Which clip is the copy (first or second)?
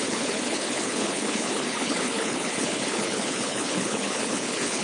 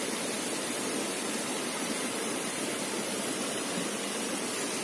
first